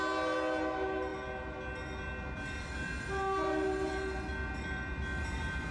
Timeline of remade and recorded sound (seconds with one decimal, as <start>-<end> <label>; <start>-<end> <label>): 0.0-5.7 recorded